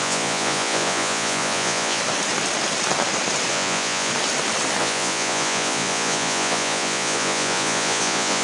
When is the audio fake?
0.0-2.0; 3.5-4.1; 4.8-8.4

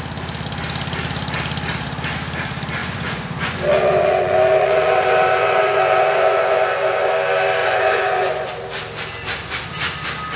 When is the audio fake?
2.8-7.1; 7.6-8.5

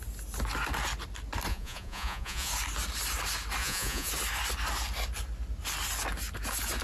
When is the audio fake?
1.5-2.5; 3.6-4.1

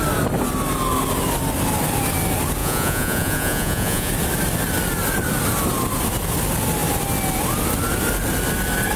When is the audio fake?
2.6-4.1